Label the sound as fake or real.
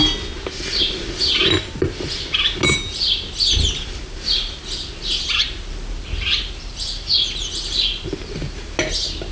real